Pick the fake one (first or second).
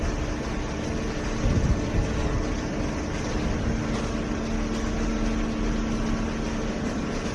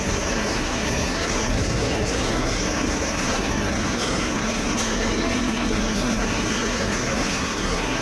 second